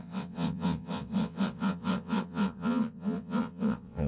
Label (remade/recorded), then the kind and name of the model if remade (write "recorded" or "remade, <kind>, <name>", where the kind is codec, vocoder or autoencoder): remade, vocoder, WaveNeXt